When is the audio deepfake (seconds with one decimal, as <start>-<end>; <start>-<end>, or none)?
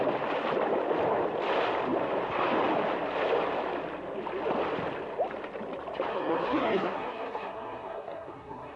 6.1-8.8